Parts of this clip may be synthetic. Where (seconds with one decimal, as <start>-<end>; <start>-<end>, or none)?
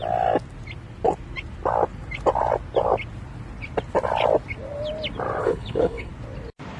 5.4-6.1